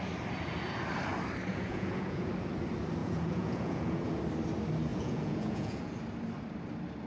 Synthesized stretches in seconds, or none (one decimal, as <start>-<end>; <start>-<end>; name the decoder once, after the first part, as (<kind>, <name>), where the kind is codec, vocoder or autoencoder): 1.5-2.3 (vocoder, Vocos); 3.0-4.2; 4.9-5.9